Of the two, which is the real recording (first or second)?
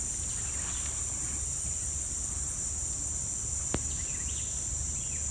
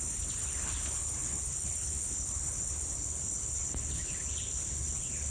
first